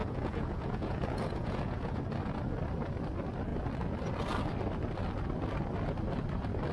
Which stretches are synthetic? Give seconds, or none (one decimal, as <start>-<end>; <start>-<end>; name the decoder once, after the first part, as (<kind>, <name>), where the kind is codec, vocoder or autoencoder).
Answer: 0.0-2.0 (vocoder, Vocos)